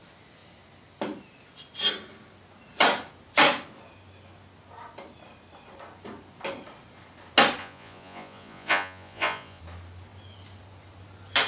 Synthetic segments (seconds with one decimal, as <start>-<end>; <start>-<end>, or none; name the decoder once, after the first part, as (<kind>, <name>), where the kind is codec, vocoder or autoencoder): 7.6-9.6 (vocoder, Vocos)